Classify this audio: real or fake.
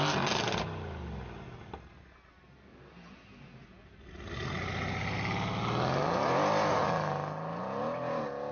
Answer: real